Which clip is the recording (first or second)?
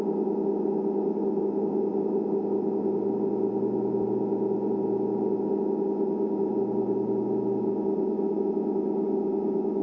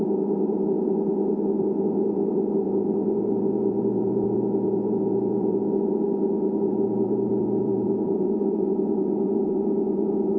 first